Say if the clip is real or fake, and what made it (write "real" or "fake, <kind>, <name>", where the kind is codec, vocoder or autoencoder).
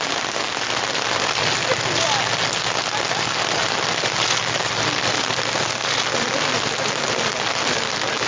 real